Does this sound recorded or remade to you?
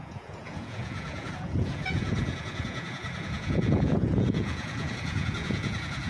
remade